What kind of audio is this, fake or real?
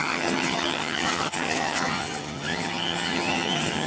fake